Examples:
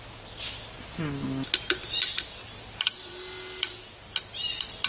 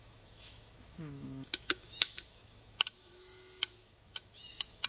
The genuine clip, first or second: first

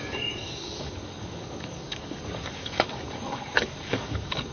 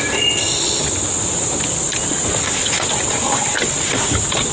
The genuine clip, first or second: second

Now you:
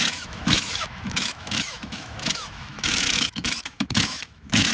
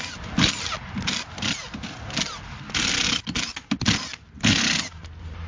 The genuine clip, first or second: second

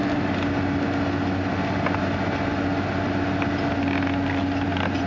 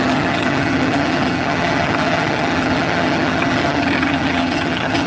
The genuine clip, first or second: first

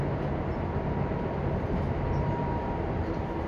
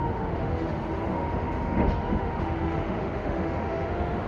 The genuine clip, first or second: first